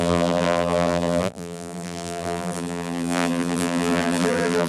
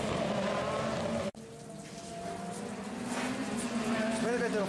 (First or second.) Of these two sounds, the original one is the second